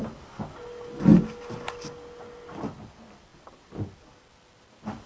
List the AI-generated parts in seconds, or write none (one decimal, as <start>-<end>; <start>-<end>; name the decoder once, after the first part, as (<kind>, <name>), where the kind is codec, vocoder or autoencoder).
none

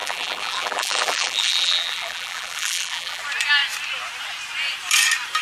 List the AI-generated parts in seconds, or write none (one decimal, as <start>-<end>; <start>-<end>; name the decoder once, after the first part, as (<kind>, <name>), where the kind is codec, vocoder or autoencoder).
0.0-3.2 (vocoder, BigVGAN v2)

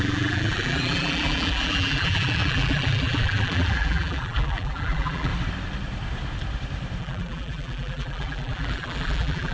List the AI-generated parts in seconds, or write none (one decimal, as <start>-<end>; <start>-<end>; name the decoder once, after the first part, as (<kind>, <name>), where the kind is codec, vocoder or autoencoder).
0.0-5.3 (vocoder, BigVGAN v2); 7.0-9.5

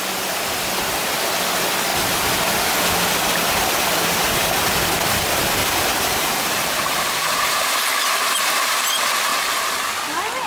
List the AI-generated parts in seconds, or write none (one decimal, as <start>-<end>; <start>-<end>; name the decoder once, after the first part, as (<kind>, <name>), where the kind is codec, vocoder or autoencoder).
5.6-8.9 (vocoder, BigVGAN v2); 9.3-9.8

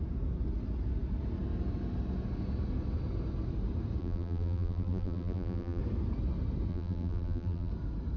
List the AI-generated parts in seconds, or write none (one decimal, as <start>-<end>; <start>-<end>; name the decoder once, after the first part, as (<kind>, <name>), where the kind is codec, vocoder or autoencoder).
4.0-5.8 (vocoder, BigVGAN v2); 6.7-7.7

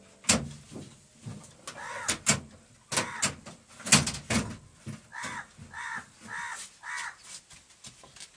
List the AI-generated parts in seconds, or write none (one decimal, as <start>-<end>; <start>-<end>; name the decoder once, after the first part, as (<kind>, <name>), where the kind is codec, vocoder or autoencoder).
none

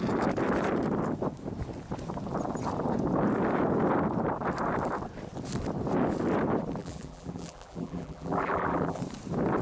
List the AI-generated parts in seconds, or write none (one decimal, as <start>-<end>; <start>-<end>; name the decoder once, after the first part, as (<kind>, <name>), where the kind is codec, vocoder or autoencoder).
6.8-9.0 (vocoder, BigVGAN v2)